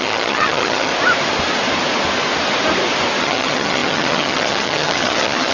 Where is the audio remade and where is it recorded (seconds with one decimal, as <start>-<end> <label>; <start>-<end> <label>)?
0.0-0.9 remade; 0.9-3.2 recorded; 3.2-5.5 remade